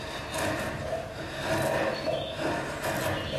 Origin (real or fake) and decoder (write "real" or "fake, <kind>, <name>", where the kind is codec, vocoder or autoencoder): real